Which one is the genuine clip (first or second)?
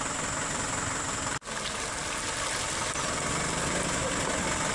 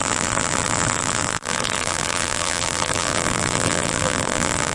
first